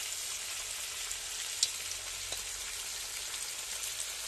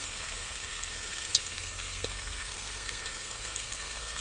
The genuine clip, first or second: first